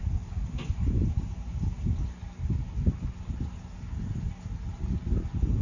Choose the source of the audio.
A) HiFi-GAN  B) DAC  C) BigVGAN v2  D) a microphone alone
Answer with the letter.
D